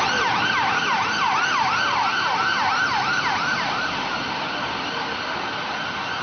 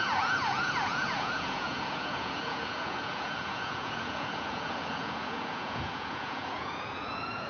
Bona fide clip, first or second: first